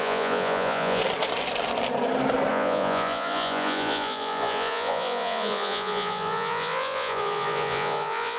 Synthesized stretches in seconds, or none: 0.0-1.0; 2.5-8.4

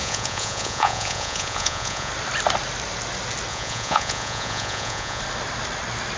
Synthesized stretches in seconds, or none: 0.0-2.1; 3.5-5.2

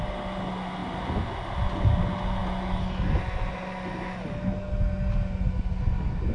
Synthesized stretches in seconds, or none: none

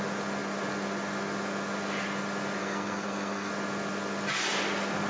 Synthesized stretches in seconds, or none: 2.6-3.5

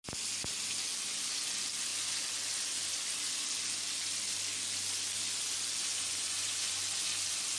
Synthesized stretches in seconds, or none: 5.9-6.8